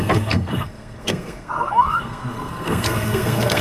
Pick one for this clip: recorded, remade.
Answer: remade